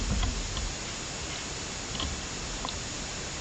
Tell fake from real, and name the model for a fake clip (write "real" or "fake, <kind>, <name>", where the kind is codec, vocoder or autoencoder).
real